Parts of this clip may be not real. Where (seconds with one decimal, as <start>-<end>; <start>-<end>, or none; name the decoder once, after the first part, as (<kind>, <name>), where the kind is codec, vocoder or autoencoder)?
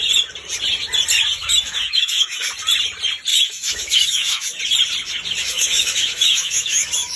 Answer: 1.4-2.5 (autoencoder, DAC-VAE); 3.3-4.6; 5.4-7.2